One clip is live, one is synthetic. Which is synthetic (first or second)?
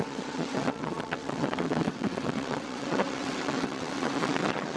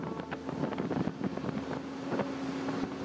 first